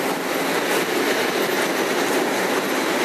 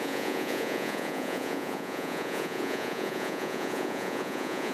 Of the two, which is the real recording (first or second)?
first